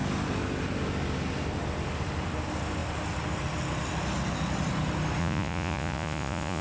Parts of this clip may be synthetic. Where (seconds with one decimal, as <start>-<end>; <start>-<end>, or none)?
5.2-6.6